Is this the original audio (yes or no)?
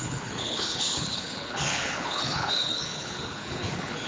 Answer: no